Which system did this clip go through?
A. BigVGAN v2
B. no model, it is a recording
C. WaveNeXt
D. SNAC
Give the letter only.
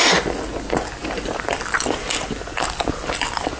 B